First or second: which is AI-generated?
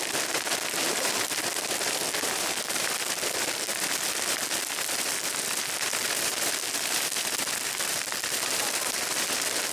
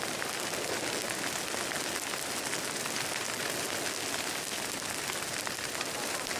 first